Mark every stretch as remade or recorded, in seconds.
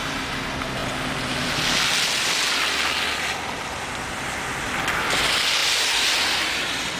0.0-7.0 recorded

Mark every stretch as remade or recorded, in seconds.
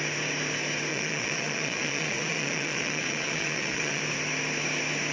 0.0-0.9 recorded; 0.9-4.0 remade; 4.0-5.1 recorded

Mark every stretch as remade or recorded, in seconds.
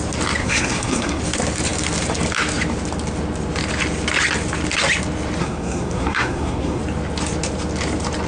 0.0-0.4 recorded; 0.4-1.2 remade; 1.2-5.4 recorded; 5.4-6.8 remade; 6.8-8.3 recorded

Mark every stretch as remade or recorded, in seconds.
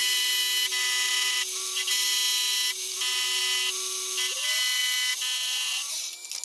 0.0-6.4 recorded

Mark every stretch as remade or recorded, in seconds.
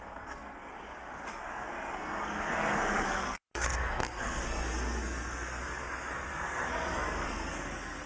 0.0-0.7 remade; 0.7-1.3 recorded; 1.3-8.1 remade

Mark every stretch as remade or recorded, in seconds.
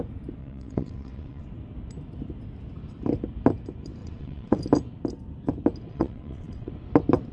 0.0-0.4 recorded; 0.4-1.5 remade; 1.5-4.0 recorded; 4.0-4.6 remade; 4.6-5.9 recorded; 5.9-6.7 remade; 6.7-7.3 recorded